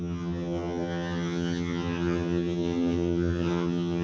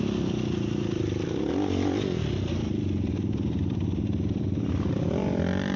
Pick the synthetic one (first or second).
first